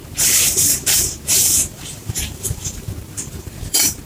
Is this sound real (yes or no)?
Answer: no